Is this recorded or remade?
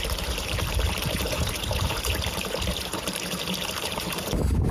remade